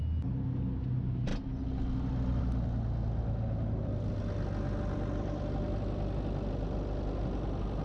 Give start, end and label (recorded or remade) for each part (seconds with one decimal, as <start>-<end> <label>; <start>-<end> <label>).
0.0-7.8 recorded

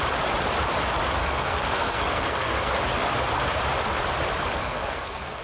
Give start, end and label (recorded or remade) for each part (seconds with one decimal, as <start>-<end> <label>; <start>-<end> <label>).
0.0-1.2 recorded; 1.2-2.7 remade; 2.7-4.6 recorded; 4.6-5.4 remade

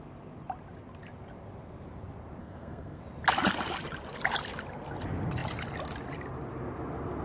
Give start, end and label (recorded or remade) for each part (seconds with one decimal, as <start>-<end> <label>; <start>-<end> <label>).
0.0-2.4 recorded; 2.4-3.0 remade; 3.0-7.2 recorded

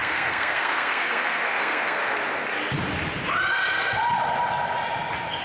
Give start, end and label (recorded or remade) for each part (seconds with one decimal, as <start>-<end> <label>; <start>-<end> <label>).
0.0-2.0 remade; 2.0-5.4 recorded

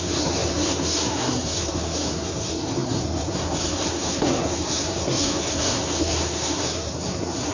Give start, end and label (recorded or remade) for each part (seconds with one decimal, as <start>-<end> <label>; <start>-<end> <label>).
0.0-7.5 remade

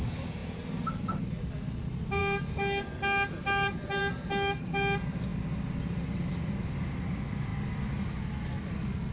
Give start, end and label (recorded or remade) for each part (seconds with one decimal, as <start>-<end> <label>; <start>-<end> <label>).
0.0-9.1 recorded